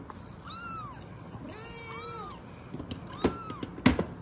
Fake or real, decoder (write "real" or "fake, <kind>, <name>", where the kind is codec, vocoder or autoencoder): real